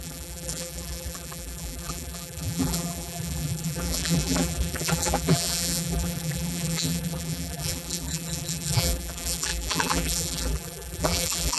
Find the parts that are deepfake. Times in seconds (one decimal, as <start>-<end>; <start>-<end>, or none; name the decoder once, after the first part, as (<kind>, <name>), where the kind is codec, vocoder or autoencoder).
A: 0.0-11.6 (vocoder, BigVGAN v2)